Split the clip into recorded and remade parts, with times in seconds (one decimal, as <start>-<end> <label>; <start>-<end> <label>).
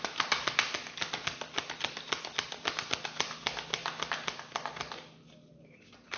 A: 0.0-6.2 recorded